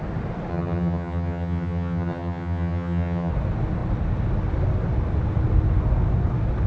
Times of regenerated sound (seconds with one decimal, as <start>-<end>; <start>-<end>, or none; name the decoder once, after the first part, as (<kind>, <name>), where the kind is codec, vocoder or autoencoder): 0.5-3.3 (vocoder, HiFi-GAN)